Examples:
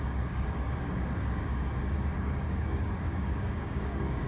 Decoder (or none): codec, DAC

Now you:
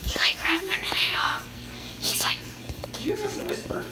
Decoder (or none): codec, SNAC